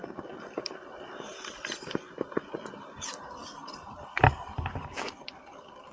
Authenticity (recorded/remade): remade